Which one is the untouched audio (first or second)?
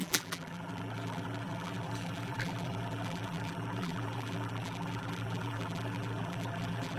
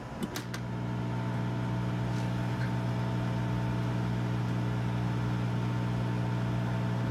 second